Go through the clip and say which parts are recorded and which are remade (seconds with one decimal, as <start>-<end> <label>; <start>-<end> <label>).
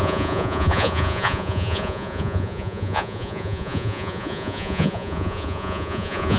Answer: 0.0-6.4 remade